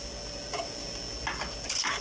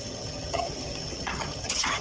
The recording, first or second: first